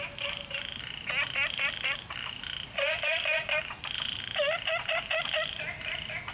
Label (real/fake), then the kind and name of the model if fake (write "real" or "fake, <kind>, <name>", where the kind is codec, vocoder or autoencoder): real